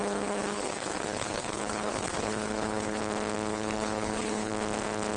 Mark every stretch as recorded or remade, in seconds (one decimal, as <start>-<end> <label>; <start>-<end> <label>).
0.0-3.0 remade; 3.0-3.5 recorded; 3.5-4.5 remade; 4.5-5.2 recorded